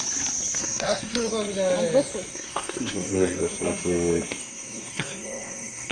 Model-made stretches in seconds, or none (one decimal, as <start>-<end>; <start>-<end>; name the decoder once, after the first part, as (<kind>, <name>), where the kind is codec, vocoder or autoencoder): 0.6-1.3 (codec, SNAC); 2.3-3.4; 4.4-5.9